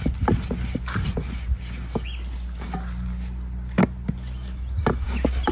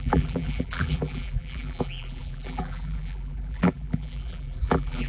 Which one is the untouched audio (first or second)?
first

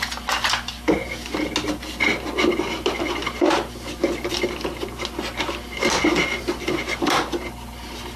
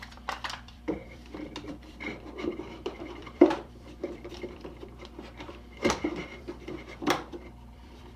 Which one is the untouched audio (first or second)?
first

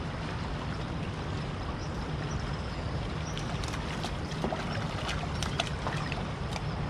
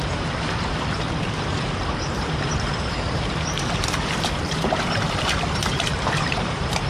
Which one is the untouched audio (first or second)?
first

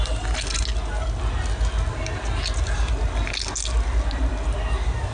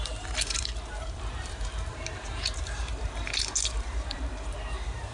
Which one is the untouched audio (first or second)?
first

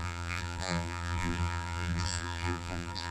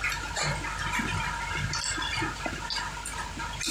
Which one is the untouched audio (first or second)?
second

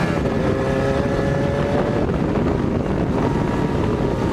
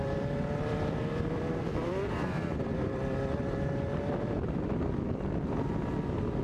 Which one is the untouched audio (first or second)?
first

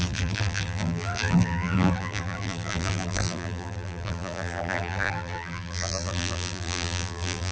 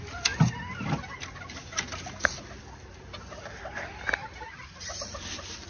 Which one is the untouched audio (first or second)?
second